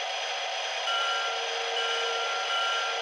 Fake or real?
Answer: real